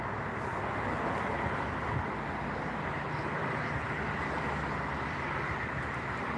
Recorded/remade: recorded